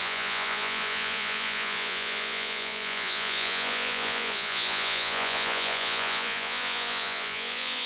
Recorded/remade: remade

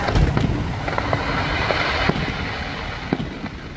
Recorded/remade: recorded